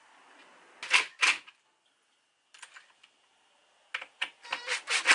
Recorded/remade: recorded